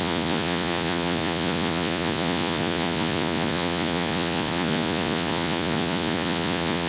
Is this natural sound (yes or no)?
no